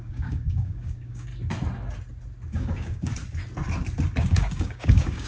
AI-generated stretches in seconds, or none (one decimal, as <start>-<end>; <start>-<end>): 0.0-1.3; 2.5-3.1; 4.2-5.3